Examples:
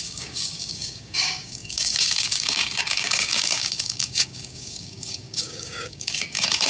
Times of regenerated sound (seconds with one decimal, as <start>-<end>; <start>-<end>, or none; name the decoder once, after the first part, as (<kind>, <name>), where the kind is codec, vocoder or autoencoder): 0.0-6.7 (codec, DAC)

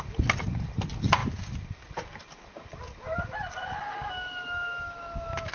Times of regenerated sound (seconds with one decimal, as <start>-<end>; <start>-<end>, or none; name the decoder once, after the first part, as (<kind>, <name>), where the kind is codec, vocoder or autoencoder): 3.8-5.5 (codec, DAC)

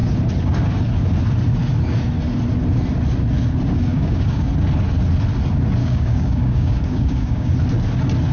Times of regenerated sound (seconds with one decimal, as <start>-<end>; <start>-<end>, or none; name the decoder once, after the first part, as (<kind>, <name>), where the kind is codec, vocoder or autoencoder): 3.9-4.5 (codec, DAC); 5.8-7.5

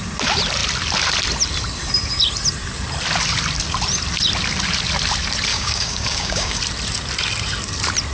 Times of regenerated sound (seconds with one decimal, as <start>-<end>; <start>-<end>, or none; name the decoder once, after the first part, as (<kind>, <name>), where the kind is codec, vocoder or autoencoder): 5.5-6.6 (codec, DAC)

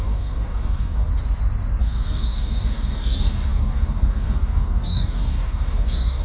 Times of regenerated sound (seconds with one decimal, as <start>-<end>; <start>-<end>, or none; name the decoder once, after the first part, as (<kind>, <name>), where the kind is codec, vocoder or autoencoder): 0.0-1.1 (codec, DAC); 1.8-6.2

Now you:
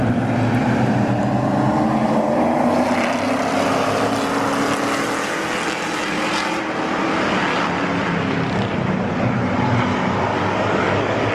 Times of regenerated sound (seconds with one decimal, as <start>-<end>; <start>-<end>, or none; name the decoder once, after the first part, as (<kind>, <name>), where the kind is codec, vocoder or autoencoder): 10.3-11.3 (codec, DAC)